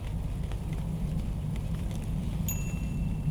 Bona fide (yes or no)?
yes